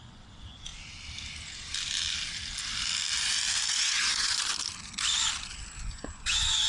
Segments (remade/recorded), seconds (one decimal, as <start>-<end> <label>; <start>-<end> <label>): 0.0-0.7 remade; 0.7-3.7 recorded; 3.7-4.5 remade; 4.5-5.8 recorded; 5.8-6.7 remade